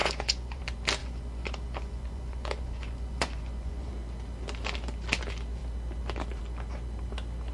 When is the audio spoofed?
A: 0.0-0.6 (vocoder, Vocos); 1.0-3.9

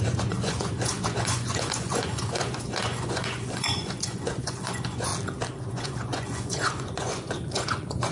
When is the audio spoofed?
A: 0.0-5.1 (vocoder, Vocos); 5.7-8.1

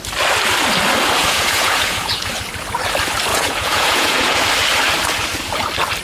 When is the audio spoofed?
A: 1.2-2.3 (vocoder, Vocos); 3.3-4.4

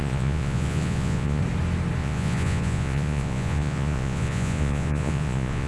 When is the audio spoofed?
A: 0.0-1.4 (vocoder, Vocos); 2.0-5.7

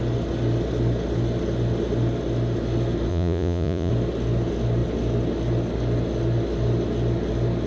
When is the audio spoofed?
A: 3.1-3.9 (vocoder, Vocos)